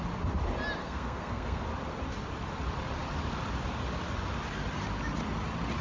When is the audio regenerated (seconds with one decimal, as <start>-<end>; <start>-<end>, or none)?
0.8-1.6